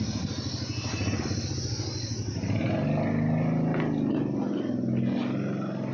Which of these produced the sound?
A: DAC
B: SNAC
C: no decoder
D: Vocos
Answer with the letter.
C